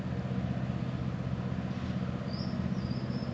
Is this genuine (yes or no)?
yes